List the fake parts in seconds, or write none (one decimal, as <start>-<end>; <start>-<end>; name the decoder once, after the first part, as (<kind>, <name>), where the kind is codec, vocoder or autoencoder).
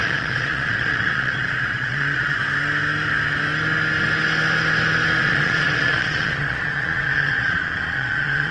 0.0-2.4 (vocoder, Vocos); 5.2-8.5